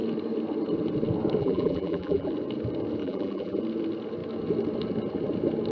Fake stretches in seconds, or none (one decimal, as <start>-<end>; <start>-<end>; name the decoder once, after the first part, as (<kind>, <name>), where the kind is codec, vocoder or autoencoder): 1.4-2.3 (vocoder, BigVGAN v2); 3.0-3.6

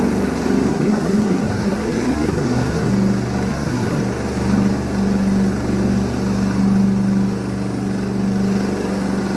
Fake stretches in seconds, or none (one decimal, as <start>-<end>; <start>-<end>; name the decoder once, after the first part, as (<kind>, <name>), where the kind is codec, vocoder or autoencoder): 0.7-2.9 (codec, SNAC); 3.5-4.0

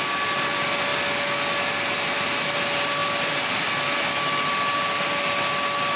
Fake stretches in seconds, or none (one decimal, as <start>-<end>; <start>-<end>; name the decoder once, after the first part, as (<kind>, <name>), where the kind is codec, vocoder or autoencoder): none

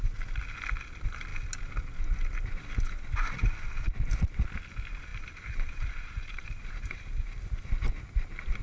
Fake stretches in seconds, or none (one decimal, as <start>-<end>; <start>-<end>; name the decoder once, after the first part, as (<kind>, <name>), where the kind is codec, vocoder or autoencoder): 5.1-7.6 (vocoder, BigVGAN v2)

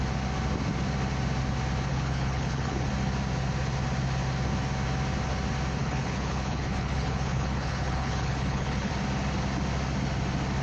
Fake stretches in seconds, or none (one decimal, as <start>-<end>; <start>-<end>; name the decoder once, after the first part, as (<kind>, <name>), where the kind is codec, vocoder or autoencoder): 1.9-2.9 (codec, HILCodec); 5.8-8.9

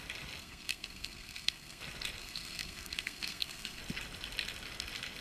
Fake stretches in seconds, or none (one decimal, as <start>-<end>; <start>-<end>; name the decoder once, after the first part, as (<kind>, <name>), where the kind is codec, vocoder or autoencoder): 0.4-1.8 (codec, SNAC); 2.2-3.8

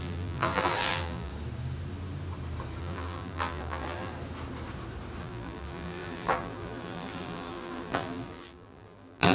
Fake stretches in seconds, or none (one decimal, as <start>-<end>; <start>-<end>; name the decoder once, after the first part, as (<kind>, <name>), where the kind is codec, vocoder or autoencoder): 0.0-1.3 (vocoder, BigVGAN v2); 2.8-4.1; 5.2-9.3

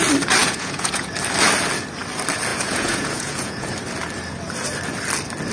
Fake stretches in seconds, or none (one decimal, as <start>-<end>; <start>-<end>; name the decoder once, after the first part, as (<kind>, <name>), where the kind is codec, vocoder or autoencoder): 0.4-1.1 (vocoder, Vocos); 2.5-3.7